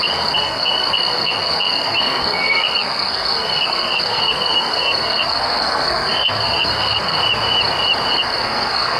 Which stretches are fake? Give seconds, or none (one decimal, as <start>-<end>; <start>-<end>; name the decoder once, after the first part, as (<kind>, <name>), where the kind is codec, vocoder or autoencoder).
0.0-7.2 (codec, SNAC); 8.1-9.0